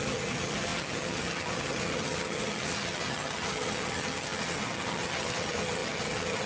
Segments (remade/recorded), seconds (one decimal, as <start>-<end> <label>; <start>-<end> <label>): 0.0-6.5 remade